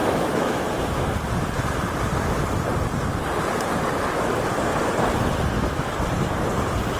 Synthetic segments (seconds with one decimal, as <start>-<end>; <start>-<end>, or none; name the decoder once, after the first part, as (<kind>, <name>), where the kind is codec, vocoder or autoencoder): 0.0-1.1 (autoencoder, DAC-VAE)